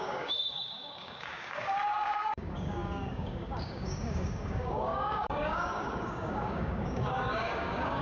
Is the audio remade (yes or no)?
yes